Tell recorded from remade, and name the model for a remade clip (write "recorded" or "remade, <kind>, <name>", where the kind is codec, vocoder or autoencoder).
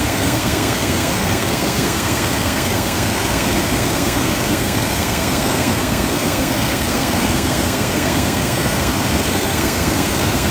remade, codec, SNAC